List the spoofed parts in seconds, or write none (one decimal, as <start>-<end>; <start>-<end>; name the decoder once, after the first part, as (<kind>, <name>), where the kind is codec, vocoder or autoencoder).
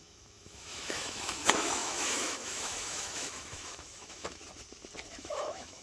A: 0.0-4.4 (autoencoder, DAC-VAE); 5.1-5.8